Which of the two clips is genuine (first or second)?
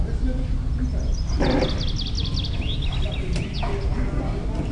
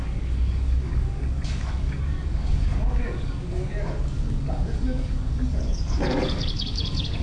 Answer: first